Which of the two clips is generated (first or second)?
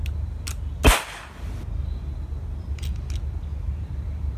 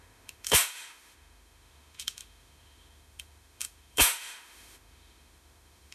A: second